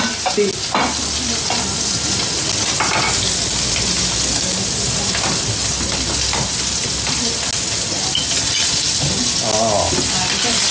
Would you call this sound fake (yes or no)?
no